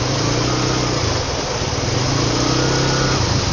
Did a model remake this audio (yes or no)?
no